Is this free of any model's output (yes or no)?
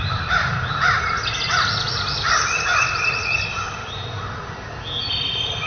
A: yes